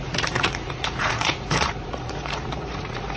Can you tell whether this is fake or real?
fake